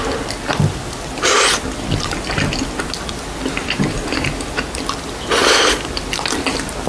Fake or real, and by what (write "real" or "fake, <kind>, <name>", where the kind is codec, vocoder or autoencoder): real